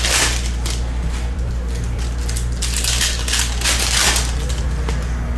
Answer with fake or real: fake